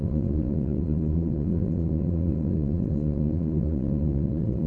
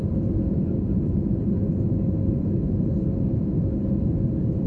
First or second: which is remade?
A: first